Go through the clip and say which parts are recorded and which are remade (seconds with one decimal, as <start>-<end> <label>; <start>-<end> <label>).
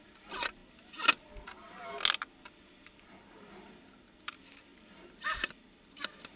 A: 0.0-0.6 remade; 0.6-3.2 recorded; 3.2-6.4 remade